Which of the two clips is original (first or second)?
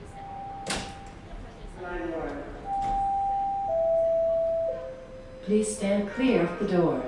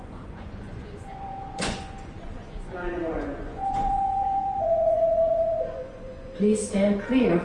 first